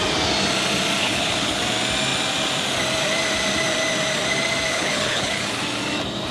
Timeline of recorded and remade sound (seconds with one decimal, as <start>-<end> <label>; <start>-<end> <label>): 0.0-1.0 recorded; 1.0-1.6 remade; 1.6-4.7 recorded; 4.7-5.6 remade; 5.6-6.3 recorded